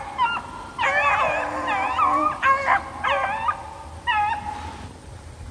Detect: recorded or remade recorded